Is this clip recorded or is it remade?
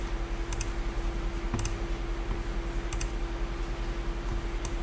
recorded